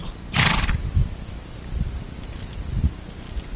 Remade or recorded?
recorded